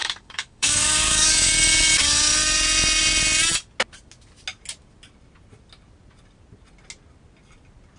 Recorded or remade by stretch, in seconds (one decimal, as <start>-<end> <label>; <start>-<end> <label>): 0.0-1.5 remade; 1.5-8.0 recorded